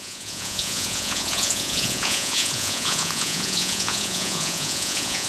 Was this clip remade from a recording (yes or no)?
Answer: yes